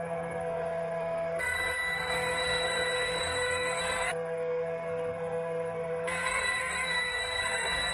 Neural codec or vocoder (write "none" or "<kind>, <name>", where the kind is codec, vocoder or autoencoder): codec, SNAC